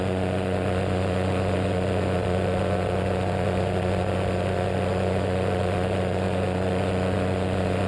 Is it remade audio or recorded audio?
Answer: remade